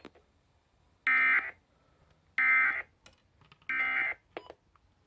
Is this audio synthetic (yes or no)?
no